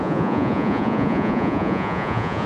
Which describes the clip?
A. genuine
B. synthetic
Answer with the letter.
B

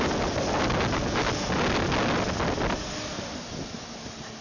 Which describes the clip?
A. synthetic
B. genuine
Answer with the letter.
B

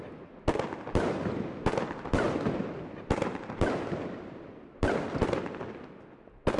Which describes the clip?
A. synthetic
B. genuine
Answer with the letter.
B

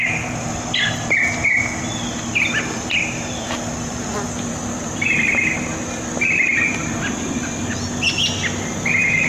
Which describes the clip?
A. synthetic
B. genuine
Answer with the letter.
B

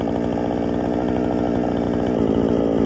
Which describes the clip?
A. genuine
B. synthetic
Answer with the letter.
A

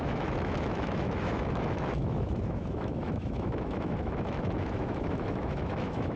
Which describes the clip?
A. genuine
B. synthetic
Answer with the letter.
B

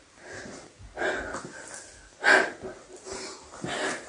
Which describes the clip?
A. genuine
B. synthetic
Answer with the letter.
A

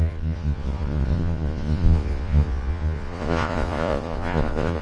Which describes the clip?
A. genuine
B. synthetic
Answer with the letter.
B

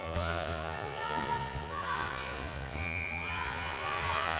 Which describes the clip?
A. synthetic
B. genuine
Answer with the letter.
A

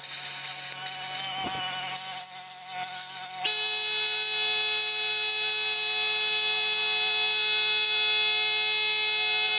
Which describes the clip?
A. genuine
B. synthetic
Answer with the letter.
A